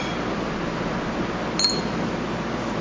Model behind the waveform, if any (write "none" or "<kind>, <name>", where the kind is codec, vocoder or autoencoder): none